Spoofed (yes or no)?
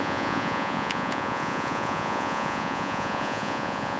yes